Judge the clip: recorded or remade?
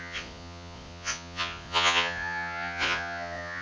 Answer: remade